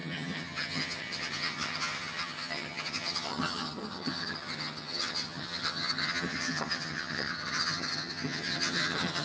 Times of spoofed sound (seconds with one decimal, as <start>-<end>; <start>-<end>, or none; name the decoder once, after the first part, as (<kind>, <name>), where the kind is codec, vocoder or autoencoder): 0.0-9.2 (vocoder, HiFi-GAN)